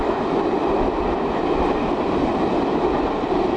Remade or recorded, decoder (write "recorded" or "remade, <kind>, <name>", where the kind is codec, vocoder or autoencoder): recorded